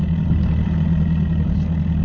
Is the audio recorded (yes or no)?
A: yes